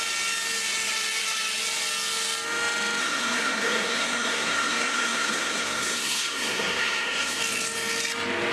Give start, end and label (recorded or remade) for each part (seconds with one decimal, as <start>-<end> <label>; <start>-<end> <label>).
0.0-3.0 recorded; 3.0-7.4 remade; 7.4-8.5 recorded